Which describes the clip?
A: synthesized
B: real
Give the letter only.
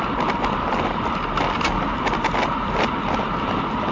B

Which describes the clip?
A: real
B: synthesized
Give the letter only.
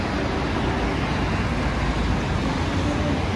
A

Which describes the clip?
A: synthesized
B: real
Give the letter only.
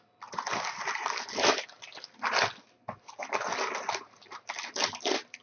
B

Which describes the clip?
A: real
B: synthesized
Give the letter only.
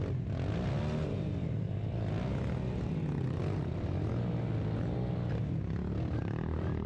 A